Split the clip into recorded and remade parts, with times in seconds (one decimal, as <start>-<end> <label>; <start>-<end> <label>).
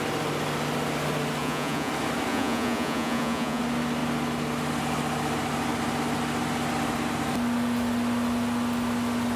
0.0-1.4 recorded; 1.4-1.9 remade; 1.9-2.3 recorded; 2.3-3.6 remade; 3.6-9.4 recorded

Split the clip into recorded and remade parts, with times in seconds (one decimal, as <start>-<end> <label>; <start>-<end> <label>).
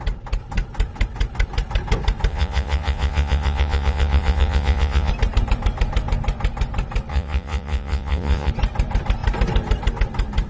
0.0-2.3 recorded; 2.3-5.1 remade; 5.1-7.1 recorded; 7.1-8.5 remade; 8.5-10.5 recorded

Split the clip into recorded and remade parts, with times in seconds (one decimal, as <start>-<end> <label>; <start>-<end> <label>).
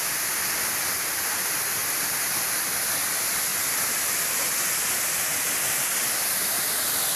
0.0-7.2 recorded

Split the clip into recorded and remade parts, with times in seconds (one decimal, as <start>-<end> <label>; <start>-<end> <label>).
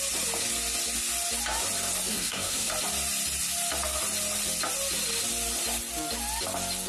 0.0-2.1 recorded; 2.1-2.7 remade; 2.7-6.9 recorded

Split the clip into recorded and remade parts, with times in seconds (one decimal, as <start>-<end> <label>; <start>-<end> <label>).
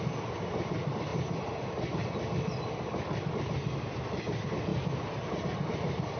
0.0-4.7 remade; 4.7-5.4 recorded; 5.4-6.2 remade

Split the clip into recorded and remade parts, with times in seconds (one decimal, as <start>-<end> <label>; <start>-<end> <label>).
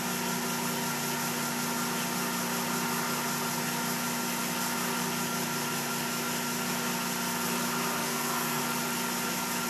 0.0-8.0 recorded; 8.0-8.6 remade; 8.6-9.7 recorded